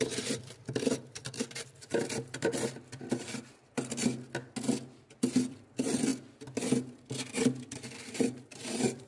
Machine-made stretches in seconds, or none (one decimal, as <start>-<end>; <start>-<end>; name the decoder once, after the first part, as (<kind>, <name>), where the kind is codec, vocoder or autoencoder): 0.0-4.0 (vocoder, BigVGAN v2); 5.5-6.1; 7.7-9.1

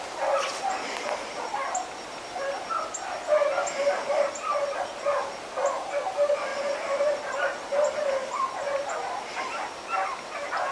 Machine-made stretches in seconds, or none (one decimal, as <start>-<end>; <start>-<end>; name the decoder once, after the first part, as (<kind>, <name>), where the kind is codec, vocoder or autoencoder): 6.5-9.3 (vocoder, BigVGAN v2)

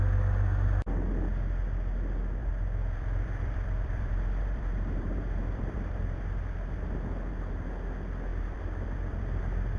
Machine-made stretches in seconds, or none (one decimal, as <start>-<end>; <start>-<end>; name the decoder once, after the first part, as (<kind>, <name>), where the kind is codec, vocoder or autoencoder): 2.4-7.3 (vocoder, BigVGAN v2); 8.3-9.4

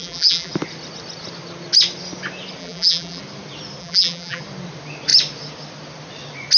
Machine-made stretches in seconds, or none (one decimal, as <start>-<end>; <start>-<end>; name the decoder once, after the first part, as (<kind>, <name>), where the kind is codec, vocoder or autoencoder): 0.0-0.5 (vocoder, BigVGAN v2); 2.6-3.2; 3.8-4.4